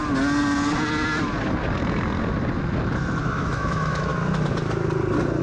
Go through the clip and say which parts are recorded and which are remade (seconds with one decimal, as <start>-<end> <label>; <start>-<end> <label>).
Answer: 0.0-3.2 recorded; 3.2-4.1 remade; 4.1-5.4 recorded